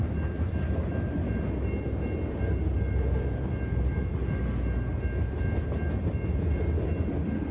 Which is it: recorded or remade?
recorded